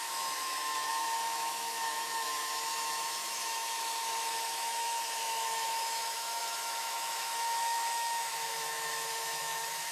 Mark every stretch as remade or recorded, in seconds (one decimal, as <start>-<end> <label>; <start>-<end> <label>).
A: 0.0-9.9 remade